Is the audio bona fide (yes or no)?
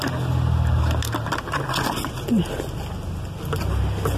yes